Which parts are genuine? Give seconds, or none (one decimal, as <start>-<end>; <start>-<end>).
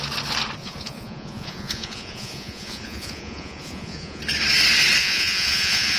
0.0-0.6; 4.2-5.0